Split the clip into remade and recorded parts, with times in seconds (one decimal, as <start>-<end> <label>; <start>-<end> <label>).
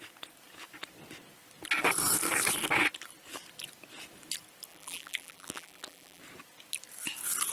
0.0-4.7 recorded; 4.7-6.2 remade; 6.2-7.5 recorded